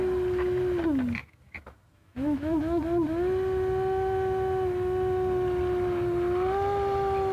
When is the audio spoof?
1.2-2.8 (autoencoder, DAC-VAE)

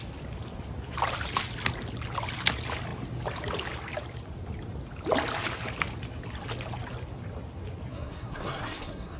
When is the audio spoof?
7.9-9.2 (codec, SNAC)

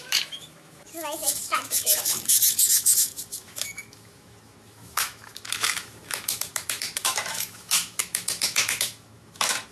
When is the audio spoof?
0.0-9.7 (autoencoder, DAC-VAE)

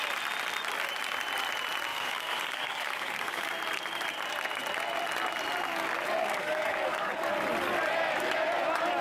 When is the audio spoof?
1.9-3.5 (codec, DAC); 6.2-7.3

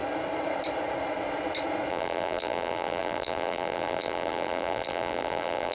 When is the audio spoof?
1.9-5.7 (vocoder, BigVGAN v2)

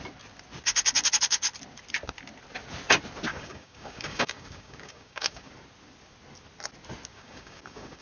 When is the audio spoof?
3.3-5.5 (codec, DAC); 7.1-8.0